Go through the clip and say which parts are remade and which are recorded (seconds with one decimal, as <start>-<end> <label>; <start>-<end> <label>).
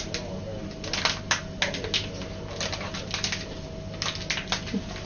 0.0-5.1 recorded